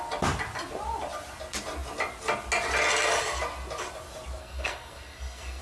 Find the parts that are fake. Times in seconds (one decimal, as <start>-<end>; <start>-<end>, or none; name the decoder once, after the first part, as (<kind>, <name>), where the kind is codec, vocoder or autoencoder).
4.4-5.6 (codec, SNAC)